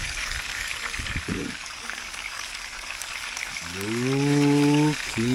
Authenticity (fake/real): fake